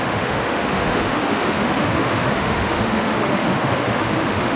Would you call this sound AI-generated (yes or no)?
yes